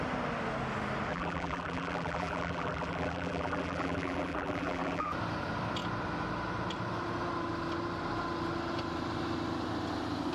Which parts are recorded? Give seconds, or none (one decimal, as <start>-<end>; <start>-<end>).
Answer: 0.0-1.1; 5.1-10.3